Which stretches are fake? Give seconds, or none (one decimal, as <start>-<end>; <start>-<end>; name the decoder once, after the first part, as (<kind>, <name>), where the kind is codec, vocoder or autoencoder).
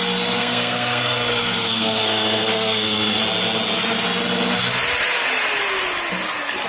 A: 0.4-3.2 (codec, SNAC)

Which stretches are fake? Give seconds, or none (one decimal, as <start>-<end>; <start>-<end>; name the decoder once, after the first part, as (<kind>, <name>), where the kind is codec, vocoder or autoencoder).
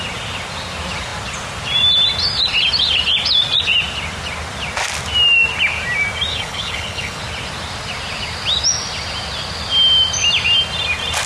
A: 6.3-7.2 (codec, HILCodec)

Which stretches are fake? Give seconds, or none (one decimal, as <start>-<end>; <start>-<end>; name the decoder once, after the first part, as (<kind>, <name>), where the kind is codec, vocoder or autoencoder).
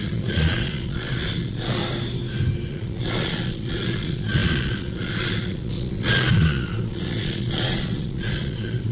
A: 0.0-1.8 (vocoder, Vocos); 2.7-8.9